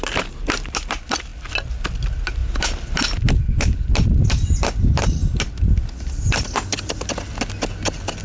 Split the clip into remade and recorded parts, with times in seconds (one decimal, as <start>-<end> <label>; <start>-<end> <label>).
0.0-8.2 recorded